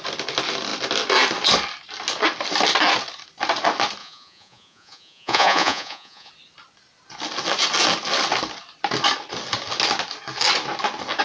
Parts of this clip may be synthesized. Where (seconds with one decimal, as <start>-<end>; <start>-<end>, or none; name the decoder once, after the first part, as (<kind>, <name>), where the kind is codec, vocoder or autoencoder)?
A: 4.0-6.3 (vocoder, Vocos)